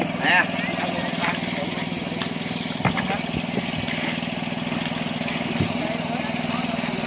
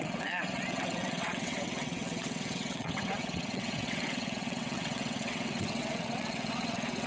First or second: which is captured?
first